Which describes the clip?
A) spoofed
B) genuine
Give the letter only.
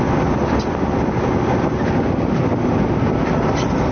B